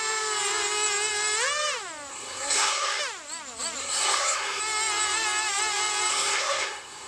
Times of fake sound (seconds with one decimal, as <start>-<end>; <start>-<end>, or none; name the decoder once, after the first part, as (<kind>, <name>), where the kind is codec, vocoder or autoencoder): 2.1-3.0 (codec, SNAC); 3.8-4.6; 6.1-7.1

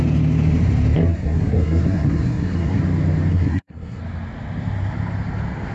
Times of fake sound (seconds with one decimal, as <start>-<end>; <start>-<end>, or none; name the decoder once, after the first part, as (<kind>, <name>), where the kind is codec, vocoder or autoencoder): 1.1-2.8 (codec, SNAC); 3.3-4.0

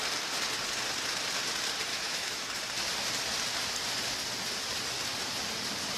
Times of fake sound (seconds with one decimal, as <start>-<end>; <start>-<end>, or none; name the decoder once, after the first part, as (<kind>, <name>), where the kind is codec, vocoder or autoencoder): 1.9-2.6 (autoencoder, DAC-VAE)